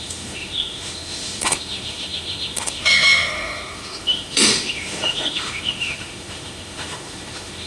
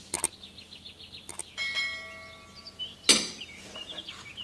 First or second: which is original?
second